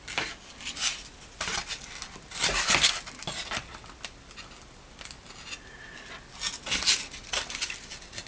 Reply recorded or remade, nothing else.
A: recorded